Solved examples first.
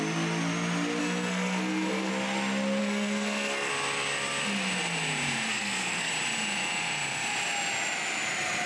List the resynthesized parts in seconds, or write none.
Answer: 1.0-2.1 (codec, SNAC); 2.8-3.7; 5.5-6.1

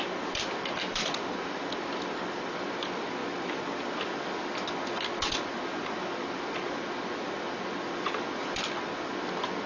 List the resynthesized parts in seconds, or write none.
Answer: none